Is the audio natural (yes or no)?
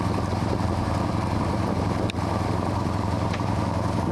no